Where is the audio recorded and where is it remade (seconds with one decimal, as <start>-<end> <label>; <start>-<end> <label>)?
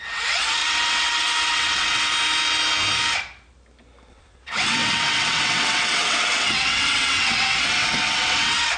0.0-2.1 remade; 2.1-4.1 recorded; 4.1-8.8 remade